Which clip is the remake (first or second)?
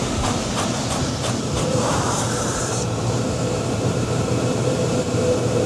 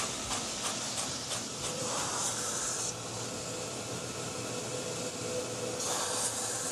first